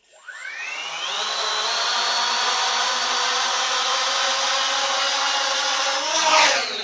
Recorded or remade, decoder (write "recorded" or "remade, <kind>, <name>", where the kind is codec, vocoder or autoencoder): recorded